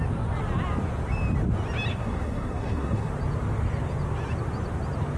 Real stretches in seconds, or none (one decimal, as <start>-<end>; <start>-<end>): 0.0-1.9; 3.1-5.2